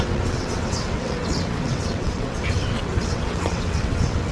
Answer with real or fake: fake